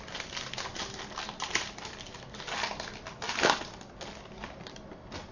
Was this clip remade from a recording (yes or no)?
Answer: no